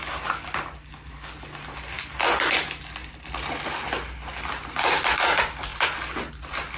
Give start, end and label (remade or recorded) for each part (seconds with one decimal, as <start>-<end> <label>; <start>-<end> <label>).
0.0-6.8 recorded